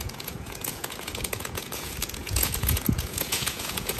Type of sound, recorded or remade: remade